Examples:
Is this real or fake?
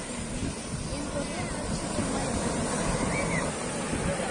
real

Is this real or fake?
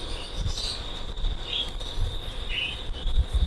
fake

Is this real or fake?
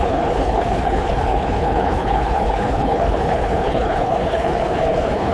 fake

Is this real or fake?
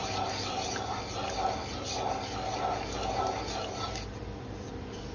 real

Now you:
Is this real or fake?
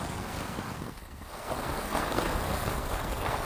fake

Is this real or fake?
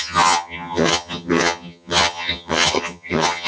fake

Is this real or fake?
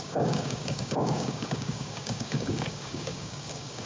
fake